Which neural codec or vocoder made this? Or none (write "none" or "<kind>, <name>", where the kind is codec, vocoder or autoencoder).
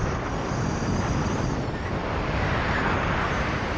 none